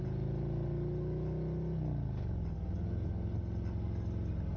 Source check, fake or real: real